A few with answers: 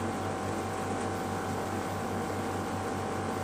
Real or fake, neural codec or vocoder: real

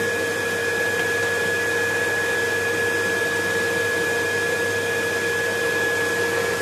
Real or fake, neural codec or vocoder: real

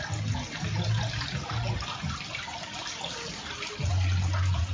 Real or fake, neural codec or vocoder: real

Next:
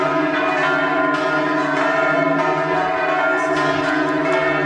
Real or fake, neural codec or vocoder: real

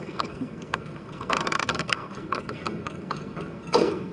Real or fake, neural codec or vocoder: fake, codec, SNAC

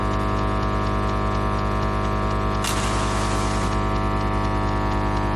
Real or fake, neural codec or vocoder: real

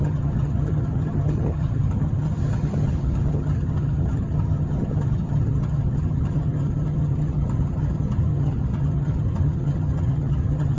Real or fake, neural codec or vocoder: fake, vocoder, HiFi-GAN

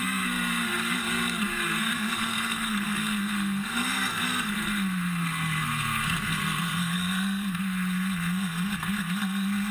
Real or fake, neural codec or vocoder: fake, codec, SNAC